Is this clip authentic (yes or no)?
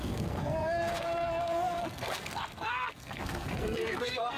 no